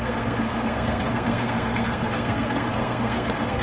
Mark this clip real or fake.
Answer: fake